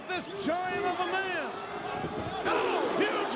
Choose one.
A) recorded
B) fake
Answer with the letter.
A